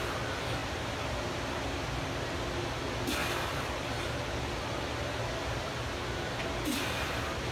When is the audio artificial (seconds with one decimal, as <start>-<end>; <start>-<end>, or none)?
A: none